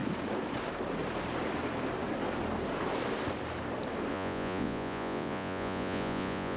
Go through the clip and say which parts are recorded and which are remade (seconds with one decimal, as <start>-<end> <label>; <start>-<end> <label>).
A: 0.0-4.1 recorded; 4.1-6.6 remade